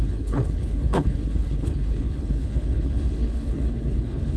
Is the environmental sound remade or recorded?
remade